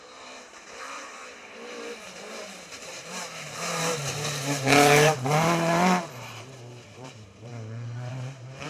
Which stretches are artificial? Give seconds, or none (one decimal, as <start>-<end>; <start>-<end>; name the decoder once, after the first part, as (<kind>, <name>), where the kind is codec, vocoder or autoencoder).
0.0-7.5 (vocoder, BigVGAN v2); 8.1-8.7